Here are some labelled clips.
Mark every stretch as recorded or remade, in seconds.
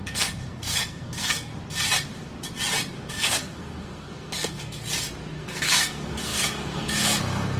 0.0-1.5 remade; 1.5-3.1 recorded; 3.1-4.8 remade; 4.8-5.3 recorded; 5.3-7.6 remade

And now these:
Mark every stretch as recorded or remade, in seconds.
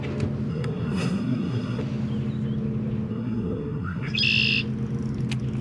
0.0-0.5 recorded; 0.5-1.8 remade; 1.8-3.1 recorded; 3.1-4.1 remade; 4.1-5.6 recorded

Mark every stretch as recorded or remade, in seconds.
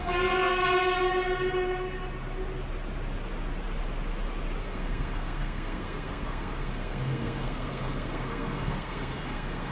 0.0-0.6 remade; 0.6-4.6 recorded; 4.6-9.7 remade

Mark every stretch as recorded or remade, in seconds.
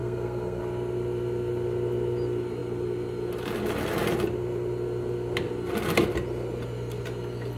0.0-0.6 remade; 0.6-7.6 recorded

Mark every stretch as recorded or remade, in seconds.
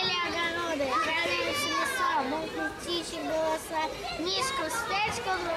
0.0-5.6 recorded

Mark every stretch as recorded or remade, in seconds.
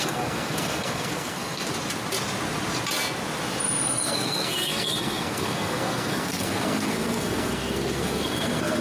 0.0-1.7 remade; 1.7-3.9 recorded; 3.9-8.8 remade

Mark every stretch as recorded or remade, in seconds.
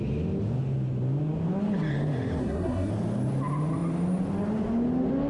0.0-2.4 recorded; 2.4-2.9 remade; 2.9-5.3 recorded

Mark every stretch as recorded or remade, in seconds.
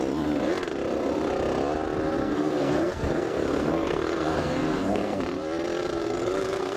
0.0-2.2 recorded; 2.2-5.2 remade; 5.2-6.0 recorded; 6.0-6.8 remade